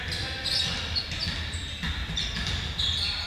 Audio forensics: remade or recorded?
recorded